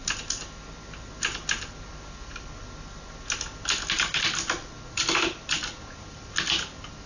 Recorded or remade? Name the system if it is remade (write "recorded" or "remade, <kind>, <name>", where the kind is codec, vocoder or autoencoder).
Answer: recorded